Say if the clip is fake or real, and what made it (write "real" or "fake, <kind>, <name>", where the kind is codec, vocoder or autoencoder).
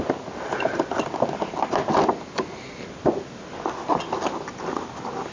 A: real